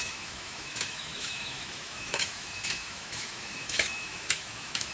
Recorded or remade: remade